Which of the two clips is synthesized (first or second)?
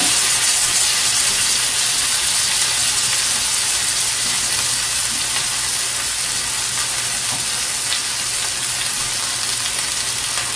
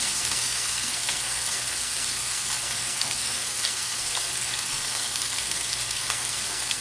second